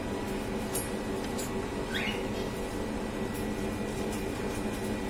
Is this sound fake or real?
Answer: real